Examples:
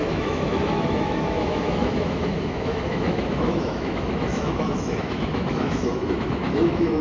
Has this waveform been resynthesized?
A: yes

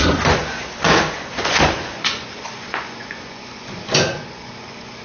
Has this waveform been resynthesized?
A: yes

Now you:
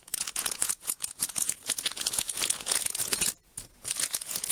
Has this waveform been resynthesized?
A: yes